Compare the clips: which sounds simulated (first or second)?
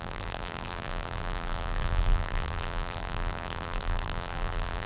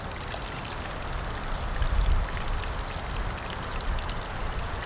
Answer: first